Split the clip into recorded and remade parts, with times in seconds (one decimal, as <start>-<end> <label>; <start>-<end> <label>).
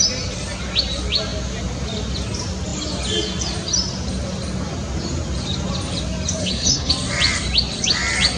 0.0-6.4 recorded; 6.4-6.9 remade; 6.9-8.4 recorded